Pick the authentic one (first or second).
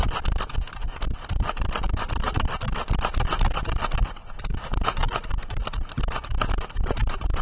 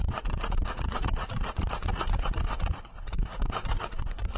first